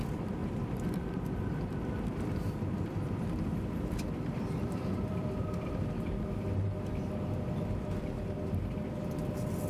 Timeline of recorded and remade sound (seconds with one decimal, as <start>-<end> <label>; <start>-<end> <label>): 0.0-0.4 recorded; 0.4-5.3 remade; 5.3-9.7 recorded